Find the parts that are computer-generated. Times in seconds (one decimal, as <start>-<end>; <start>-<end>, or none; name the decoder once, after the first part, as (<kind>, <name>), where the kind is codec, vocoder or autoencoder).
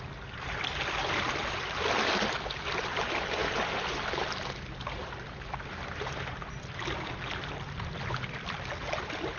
0.0-9.4 (vocoder, BigVGAN v2)